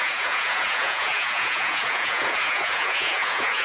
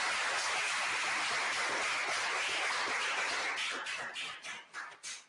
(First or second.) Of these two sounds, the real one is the second